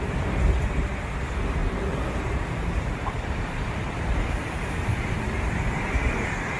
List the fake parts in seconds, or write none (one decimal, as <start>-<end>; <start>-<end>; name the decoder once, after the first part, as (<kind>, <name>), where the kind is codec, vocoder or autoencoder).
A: 0.0-1.6 (vocoder, BigVGAN v2); 2.1-6.6